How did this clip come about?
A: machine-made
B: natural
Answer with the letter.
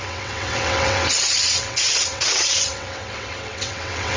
A